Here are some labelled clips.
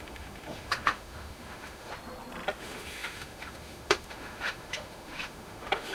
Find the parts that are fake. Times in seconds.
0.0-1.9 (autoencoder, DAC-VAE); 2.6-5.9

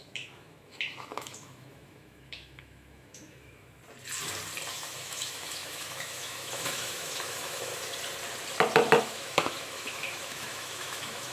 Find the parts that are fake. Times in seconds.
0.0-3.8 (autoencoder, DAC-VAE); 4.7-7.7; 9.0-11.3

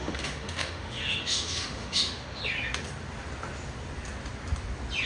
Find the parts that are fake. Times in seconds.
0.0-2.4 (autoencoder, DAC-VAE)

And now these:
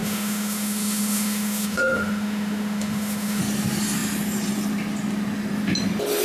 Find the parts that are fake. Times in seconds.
0.0-3.4 (autoencoder, DAC-VAE)